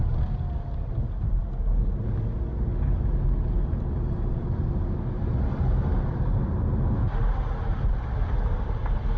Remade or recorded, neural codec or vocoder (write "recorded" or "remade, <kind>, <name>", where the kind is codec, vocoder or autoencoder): recorded